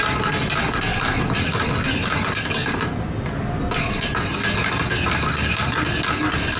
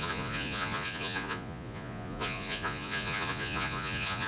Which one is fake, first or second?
second